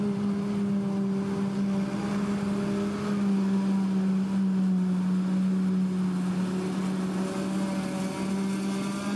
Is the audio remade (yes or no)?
no